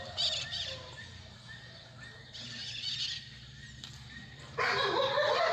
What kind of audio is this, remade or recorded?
recorded